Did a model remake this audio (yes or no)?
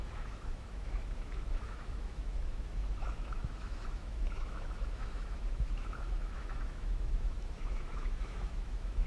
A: yes